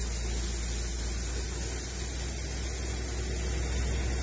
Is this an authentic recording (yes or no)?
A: yes